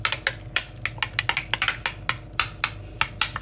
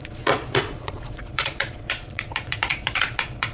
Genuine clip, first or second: first